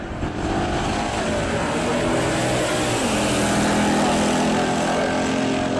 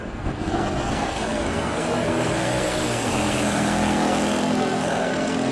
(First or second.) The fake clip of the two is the second